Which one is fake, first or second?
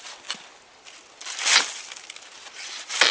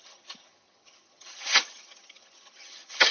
second